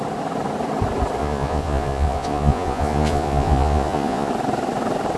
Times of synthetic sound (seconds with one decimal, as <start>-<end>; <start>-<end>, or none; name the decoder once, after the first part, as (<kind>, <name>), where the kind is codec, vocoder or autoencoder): 1.2-4.3 (vocoder, Vocos)